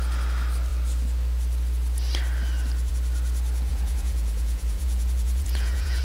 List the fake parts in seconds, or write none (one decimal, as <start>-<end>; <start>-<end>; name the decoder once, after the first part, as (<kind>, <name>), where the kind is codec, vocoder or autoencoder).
3.7-6.0 (vocoder, Vocos)